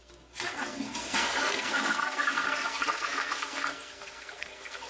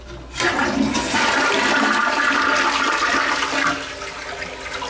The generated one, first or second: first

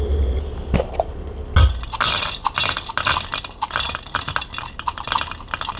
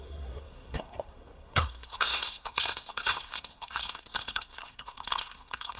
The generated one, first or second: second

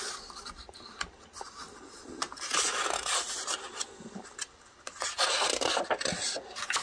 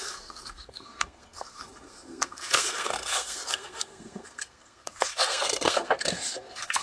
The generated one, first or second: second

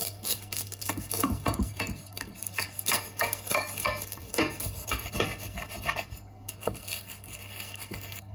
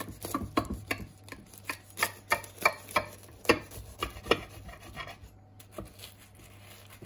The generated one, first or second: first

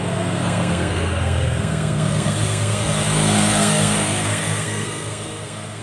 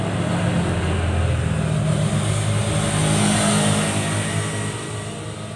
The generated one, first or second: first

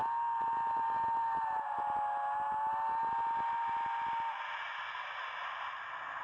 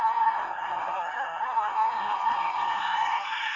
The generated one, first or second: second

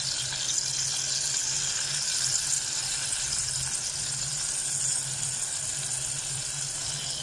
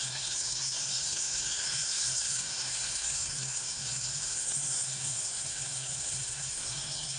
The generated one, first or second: second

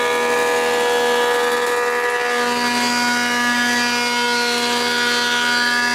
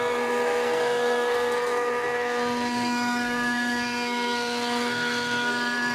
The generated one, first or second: second